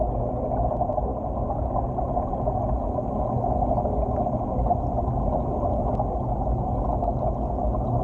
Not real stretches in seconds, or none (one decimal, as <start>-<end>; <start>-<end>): none